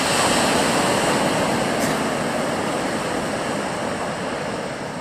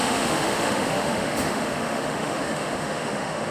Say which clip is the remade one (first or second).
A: second